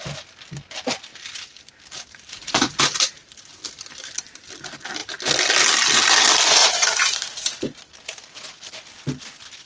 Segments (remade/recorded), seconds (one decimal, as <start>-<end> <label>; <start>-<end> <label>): 0.0-2.3 recorded; 2.3-2.8 remade; 2.8-6.6 recorded; 6.6-7.5 remade; 7.5-9.7 recorded